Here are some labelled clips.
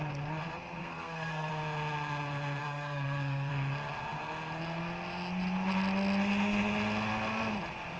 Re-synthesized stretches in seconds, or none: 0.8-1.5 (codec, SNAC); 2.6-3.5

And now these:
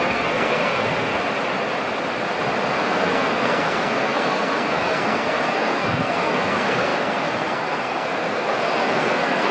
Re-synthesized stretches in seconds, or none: 0.0-1.1 (codec, SNAC); 2.7-9.5

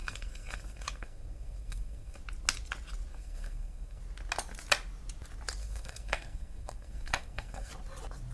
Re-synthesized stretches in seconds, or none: 0.0-2.2 (codec, SNAC); 3.1-4.0; 5.6-7.7

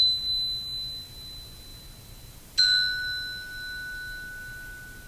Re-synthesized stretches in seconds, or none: none